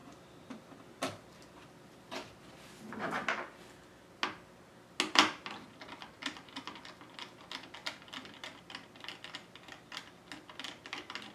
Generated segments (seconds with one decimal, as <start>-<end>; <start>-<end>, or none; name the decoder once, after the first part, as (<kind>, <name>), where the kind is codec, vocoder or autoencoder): none